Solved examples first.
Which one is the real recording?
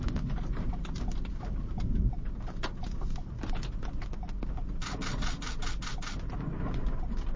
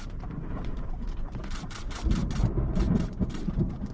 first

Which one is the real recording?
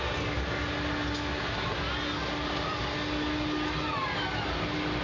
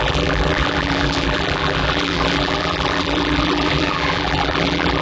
first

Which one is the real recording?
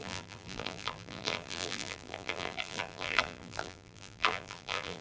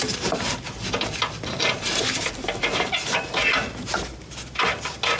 second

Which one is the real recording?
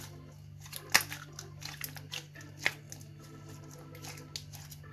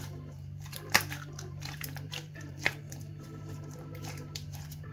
first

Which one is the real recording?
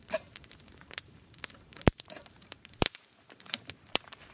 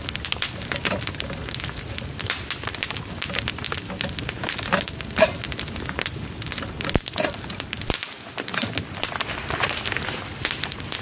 second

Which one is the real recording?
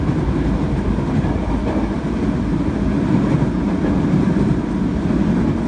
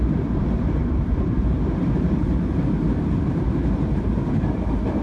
first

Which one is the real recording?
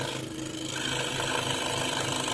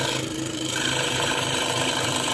first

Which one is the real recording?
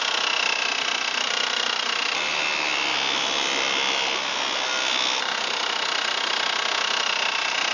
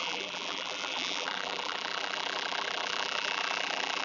first